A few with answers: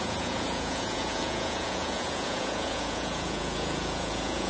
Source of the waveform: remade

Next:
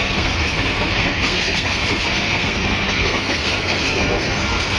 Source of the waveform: remade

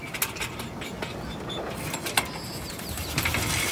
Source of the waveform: recorded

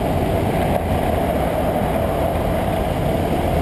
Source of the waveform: recorded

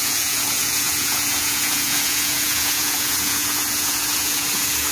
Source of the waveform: remade